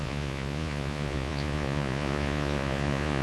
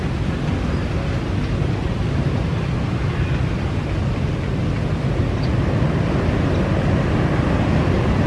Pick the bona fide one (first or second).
second